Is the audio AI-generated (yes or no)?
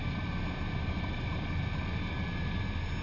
no